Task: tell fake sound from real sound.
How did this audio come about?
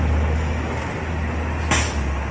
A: real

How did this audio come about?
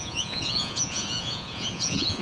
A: fake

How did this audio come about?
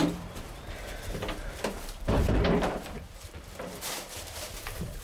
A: fake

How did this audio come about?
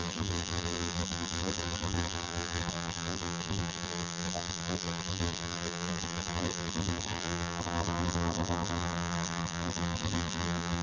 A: fake